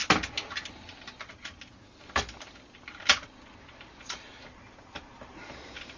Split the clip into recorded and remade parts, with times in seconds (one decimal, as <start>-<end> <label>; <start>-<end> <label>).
0.0-3.6 recorded; 3.6-6.0 remade